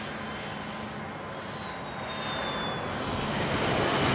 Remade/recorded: recorded